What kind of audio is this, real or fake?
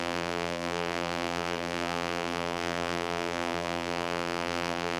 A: fake